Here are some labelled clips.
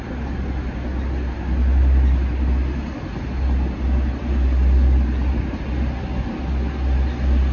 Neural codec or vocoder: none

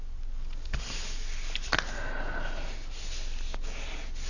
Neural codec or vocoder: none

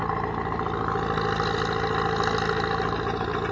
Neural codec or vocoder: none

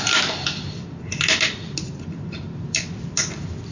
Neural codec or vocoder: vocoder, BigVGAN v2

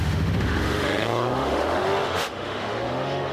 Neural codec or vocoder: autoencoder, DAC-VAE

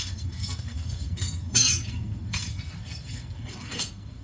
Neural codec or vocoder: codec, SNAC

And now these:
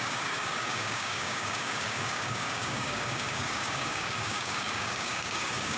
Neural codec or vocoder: codec, DAC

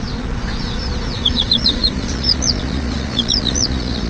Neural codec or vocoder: vocoder, Vocos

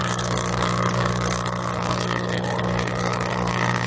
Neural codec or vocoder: codec, DAC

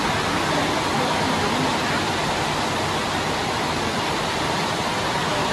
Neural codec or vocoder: none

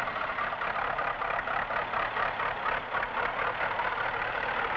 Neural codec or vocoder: none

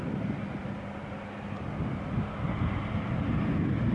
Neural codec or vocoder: none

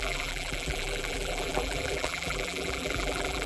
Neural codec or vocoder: vocoder, BigVGAN v2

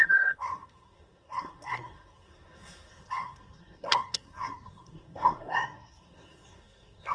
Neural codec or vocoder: codec, SNAC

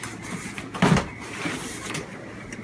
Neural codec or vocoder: none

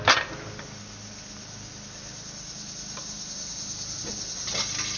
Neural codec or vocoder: none